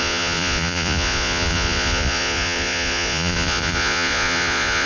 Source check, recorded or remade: remade